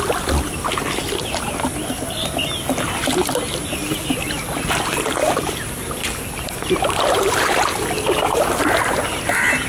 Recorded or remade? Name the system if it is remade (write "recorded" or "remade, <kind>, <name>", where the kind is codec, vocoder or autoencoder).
recorded